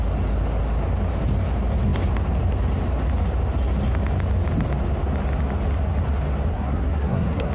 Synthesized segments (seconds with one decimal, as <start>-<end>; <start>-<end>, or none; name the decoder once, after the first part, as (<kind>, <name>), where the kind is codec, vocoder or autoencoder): 6.5-7.5 (codec, SNAC)